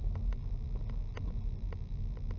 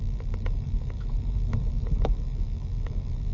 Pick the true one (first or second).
first